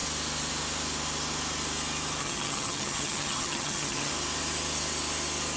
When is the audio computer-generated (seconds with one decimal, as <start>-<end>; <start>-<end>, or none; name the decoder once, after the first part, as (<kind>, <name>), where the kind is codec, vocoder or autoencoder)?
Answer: 2.2-4.1 (vocoder, HiFi-GAN)